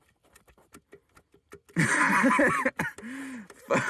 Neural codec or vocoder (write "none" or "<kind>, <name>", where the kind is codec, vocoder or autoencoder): none